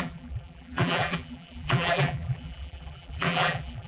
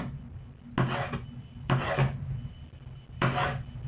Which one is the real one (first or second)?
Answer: second